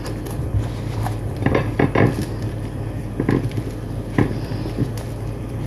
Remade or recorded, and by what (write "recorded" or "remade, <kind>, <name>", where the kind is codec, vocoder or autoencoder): remade, vocoder, BigVGAN v2